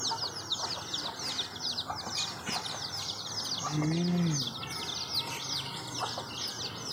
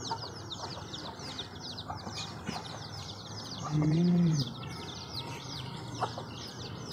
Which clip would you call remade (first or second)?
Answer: second